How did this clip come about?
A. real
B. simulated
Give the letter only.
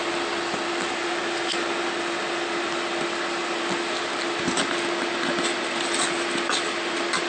A